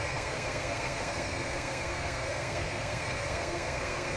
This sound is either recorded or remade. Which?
remade